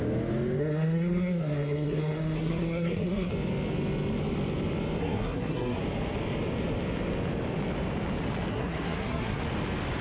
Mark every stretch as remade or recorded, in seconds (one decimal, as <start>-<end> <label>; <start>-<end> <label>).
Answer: 0.0-0.6 recorded; 0.6-3.3 remade; 3.3-5.0 recorded; 5.0-5.8 remade; 5.8-8.5 recorded; 8.5-9.4 remade; 9.4-10.0 recorded